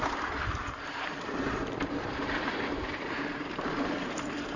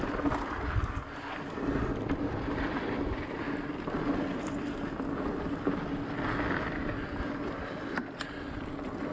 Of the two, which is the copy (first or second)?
first